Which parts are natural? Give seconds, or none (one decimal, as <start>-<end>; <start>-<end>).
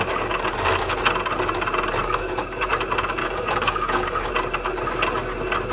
0.0-2.0; 2.7-3.2; 4.3-5.7